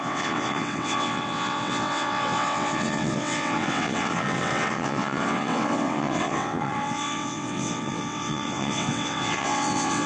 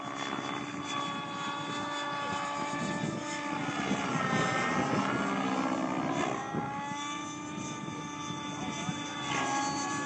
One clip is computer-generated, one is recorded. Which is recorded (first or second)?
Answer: second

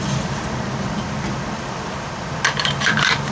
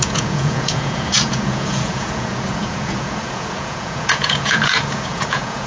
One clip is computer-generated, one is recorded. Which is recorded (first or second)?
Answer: first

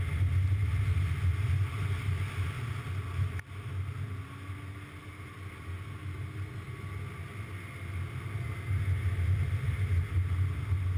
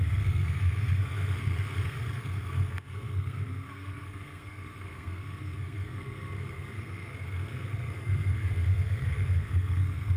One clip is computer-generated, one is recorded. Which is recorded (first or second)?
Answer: first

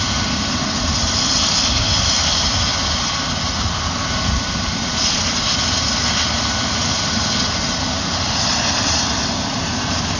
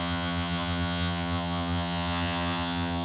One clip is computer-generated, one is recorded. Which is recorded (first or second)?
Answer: first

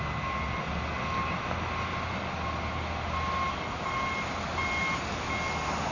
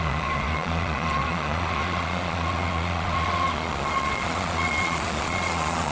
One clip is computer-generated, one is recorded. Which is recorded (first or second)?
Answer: first